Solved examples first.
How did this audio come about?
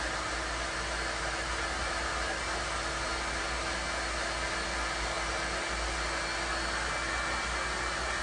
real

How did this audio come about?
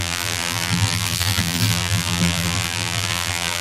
fake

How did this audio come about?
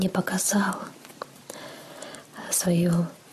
real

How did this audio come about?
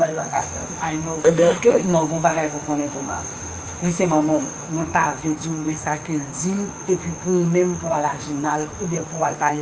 fake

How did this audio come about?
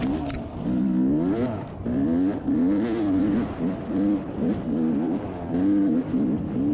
real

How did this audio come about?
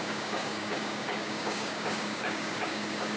fake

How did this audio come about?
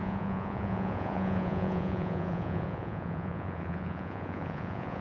fake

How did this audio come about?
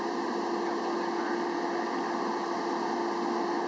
real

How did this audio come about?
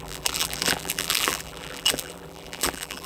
fake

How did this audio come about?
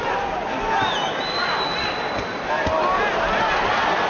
real